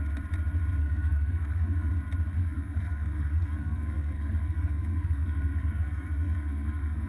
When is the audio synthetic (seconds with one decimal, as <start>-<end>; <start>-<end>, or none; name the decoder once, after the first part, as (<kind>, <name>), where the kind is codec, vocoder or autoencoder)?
0.8-1.9 (codec, SNAC); 2.4-7.1

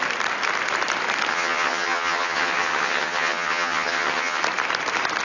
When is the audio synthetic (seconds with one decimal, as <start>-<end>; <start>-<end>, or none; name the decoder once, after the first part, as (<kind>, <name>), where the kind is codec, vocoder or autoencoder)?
1.3-4.4 (vocoder, HiFi-GAN)

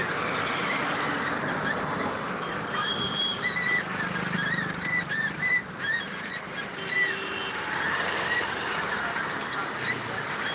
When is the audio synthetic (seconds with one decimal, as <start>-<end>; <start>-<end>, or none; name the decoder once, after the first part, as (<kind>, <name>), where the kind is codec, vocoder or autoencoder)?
none

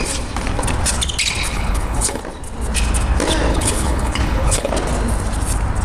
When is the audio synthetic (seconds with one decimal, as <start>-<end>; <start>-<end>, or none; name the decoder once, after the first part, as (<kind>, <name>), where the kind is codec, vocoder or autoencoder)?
1.5-2.2 (codec, HILCodec); 3.5-4.7

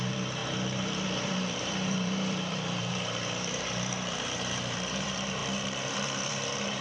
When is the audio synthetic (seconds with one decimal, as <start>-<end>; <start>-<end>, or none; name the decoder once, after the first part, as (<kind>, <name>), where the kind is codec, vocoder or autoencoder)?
0.0-6.8 (vocoder, BigVGAN v2)

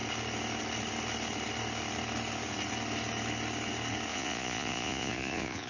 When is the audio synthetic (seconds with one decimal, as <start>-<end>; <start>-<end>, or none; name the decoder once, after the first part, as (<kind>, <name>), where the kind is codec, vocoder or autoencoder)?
4.1-5.7 (vocoder, Vocos)

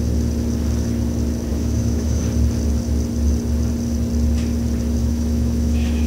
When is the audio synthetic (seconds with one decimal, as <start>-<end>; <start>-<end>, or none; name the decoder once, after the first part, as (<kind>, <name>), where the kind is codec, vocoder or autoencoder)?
1.5-2.2 (autoencoder, DAC-VAE); 5.0-6.1

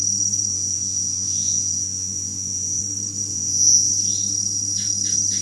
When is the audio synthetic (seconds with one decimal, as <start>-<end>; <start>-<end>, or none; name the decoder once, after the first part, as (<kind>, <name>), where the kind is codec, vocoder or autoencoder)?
0.5-2.8 (vocoder, Vocos); 3.3-3.9